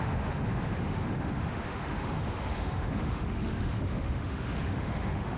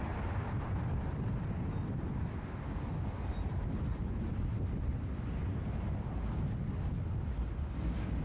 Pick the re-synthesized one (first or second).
first